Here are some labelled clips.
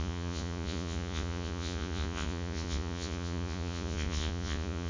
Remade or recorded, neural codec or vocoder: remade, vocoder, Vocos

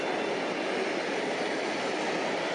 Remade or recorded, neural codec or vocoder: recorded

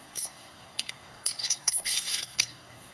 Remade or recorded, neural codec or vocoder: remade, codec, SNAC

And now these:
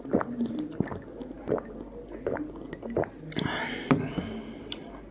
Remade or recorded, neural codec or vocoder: recorded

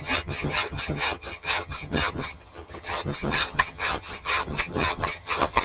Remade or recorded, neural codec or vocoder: remade, vocoder, HiFi-GAN